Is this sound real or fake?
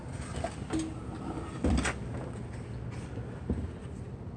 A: real